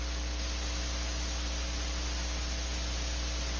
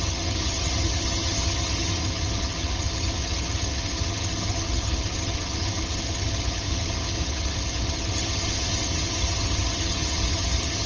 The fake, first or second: second